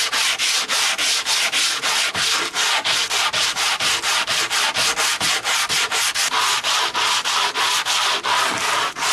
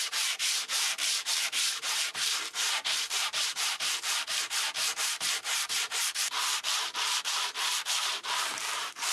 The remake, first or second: second